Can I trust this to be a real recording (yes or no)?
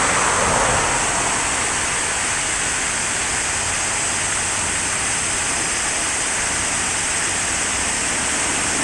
yes